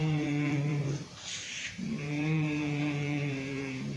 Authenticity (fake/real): fake